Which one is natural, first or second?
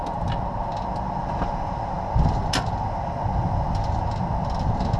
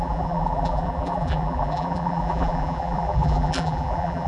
first